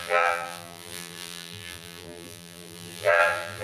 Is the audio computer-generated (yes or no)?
yes